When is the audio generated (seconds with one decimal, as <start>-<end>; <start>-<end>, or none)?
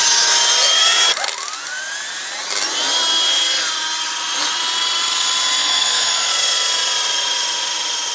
5.6-6.3